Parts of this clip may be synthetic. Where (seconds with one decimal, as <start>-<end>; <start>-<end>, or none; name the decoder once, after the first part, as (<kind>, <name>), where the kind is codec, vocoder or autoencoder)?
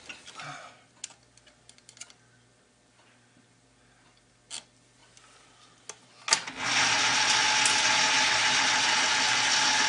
none